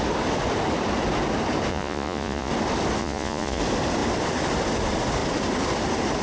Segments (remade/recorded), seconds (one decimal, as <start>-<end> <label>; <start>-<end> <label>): 0.0-1.7 recorded; 1.7-2.5 remade; 2.5-3.0 recorded; 3.0-3.6 remade; 3.6-6.2 recorded